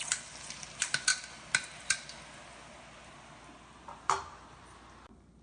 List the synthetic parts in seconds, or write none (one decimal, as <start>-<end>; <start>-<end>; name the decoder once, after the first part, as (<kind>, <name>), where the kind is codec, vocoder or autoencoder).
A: none